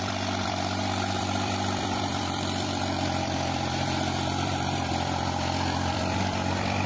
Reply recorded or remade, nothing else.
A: remade